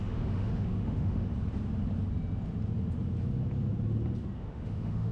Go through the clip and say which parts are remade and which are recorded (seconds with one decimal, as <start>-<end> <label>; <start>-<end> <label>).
0.0-1.3 remade; 1.3-4.4 recorded; 4.4-5.1 remade